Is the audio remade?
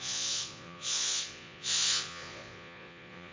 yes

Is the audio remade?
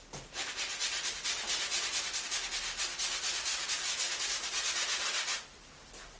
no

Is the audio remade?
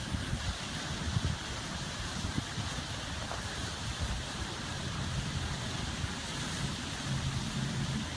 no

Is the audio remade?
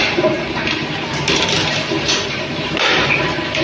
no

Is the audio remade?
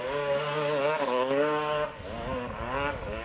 yes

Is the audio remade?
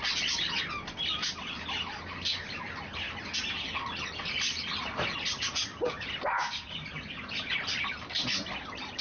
no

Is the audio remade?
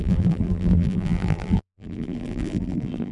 yes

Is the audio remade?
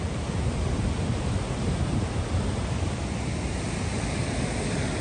no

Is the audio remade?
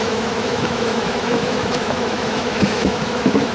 yes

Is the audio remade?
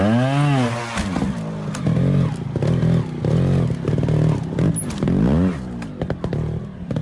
no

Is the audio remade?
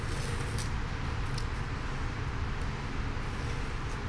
no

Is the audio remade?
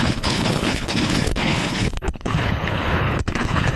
yes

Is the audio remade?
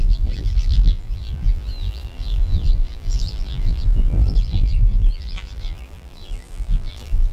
yes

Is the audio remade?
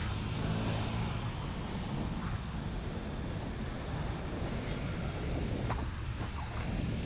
no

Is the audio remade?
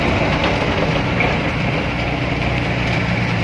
no